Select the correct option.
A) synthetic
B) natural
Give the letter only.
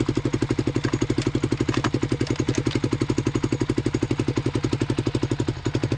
B